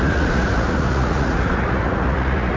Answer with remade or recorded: remade